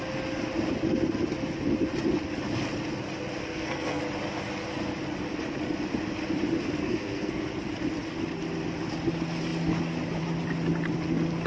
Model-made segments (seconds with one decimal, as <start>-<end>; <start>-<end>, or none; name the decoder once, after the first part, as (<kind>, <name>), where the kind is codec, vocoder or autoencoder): 3.4-4.0 (codec, SNAC); 6.8-7.4